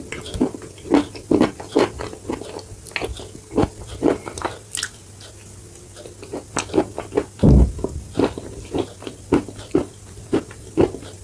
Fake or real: real